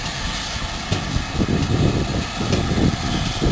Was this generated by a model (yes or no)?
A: no